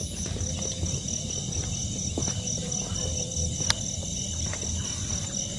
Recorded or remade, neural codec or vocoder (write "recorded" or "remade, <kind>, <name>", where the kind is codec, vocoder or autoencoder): recorded